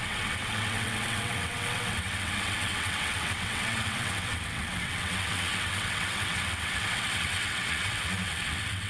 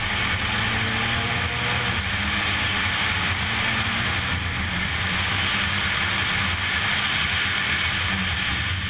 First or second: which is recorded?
second